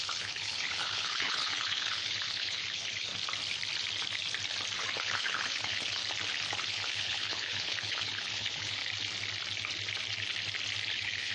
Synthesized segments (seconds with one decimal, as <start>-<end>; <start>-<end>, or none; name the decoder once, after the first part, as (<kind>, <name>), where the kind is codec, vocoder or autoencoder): 0.0-3.1 (codec, HILCodec); 4.8-6.0; 6.6-8.8; 10.9-11.3